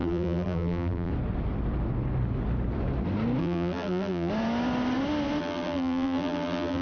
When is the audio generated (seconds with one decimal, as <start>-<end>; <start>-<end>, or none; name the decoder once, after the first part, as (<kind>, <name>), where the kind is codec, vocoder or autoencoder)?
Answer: 0.0-1.1 (vocoder, BigVGAN v2); 3.4-4.3; 5.4-6.8